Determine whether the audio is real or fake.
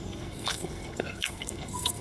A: fake